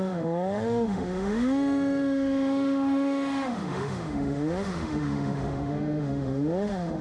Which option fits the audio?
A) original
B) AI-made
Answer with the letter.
B